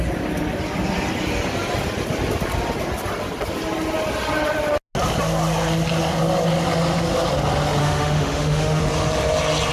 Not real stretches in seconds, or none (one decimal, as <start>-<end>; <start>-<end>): 7.8-8.8